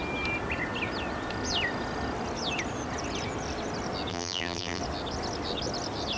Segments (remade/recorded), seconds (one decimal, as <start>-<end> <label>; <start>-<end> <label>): 0.0-4.1 recorded; 4.1-4.8 remade; 4.8-6.2 recorded

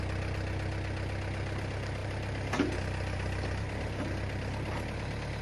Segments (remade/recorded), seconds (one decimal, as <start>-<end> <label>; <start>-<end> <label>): 0.0-2.0 recorded; 2.0-2.8 remade; 2.8-5.4 recorded

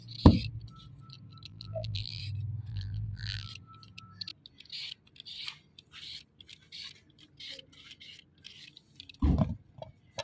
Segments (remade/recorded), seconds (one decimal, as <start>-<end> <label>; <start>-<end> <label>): 0.0-1.5 recorded; 1.5-2.2 remade; 2.2-2.7 recorded; 2.7-3.5 remade; 3.5-10.2 recorded

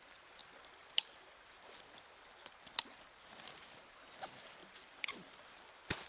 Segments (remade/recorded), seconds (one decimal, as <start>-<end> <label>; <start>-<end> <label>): 0.0-0.4 recorded; 0.4-4.1 remade; 4.1-4.6 recorded; 4.6-6.1 remade

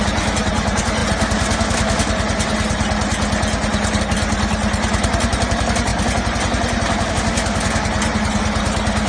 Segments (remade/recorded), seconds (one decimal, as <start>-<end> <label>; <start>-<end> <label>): 0.0-9.1 recorded

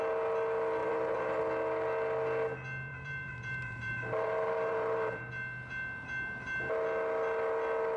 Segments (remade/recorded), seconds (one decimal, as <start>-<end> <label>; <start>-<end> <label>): 0.0-0.8 recorded; 0.8-1.4 remade; 1.4-2.9 recorded; 2.9-5.3 remade; 5.3-8.0 recorded